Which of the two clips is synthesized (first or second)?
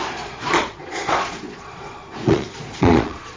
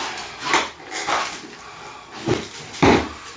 first